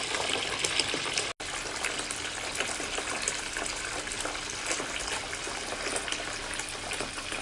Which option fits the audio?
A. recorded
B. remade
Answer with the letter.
A